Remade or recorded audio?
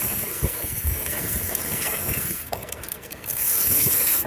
remade